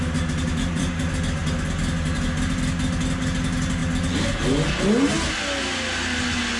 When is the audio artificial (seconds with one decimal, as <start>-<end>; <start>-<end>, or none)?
none